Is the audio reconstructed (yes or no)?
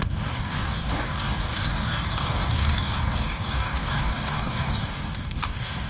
yes